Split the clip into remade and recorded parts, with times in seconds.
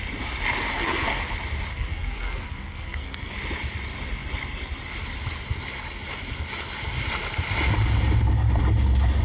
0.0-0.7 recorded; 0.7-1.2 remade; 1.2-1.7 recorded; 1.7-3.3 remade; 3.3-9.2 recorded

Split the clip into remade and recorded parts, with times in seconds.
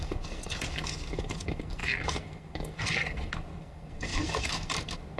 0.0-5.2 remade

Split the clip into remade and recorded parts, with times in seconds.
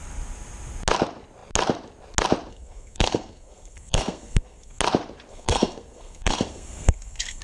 0.0-2.5 recorded; 2.5-4.8 remade; 4.8-5.3 recorded; 5.3-7.4 remade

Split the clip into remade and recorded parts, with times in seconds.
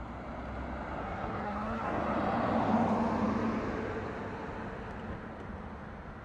0.0-1.0 recorded; 1.0-2.0 remade; 2.0-6.2 recorded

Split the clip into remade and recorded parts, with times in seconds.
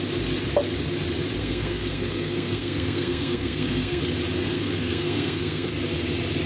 0.0-1.4 recorded; 1.4-4.0 remade; 4.0-4.4 recorded; 4.4-5.7 remade; 5.7-6.5 recorded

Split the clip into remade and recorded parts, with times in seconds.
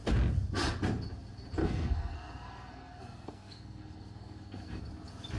0.0-1.6 recorded; 1.6-4.8 remade; 4.8-5.4 recorded